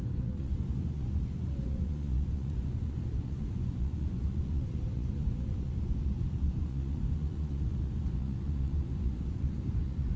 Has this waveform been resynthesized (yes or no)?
yes